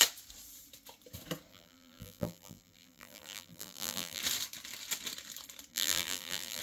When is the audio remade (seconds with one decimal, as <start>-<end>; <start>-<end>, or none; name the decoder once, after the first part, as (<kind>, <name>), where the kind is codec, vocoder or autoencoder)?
1.5-4.2 (vocoder, BigVGAN v2); 5.7-6.6